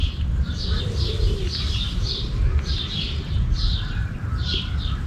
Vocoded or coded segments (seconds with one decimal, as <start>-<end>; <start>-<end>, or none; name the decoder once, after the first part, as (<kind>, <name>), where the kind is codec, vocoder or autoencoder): none